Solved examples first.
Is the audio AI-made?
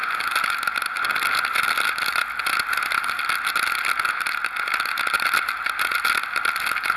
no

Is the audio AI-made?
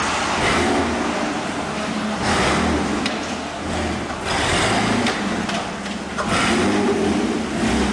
no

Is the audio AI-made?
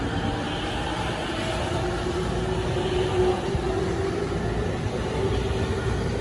no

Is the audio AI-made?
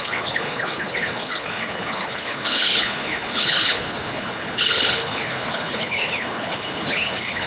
yes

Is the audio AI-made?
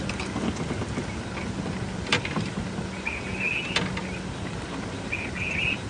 no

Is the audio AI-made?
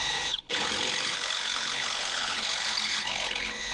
yes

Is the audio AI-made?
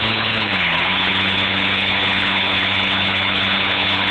yes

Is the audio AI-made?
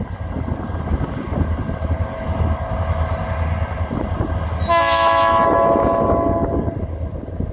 no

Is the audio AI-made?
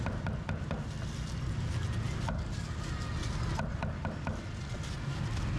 no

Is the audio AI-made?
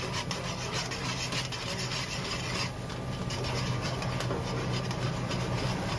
no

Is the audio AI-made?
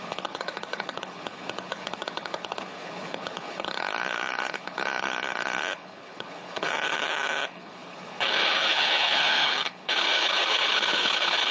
yes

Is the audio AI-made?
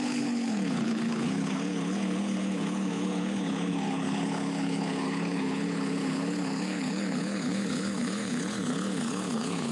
yes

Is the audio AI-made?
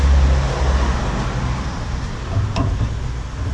no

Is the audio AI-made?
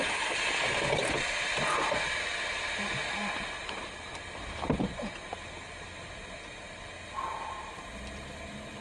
no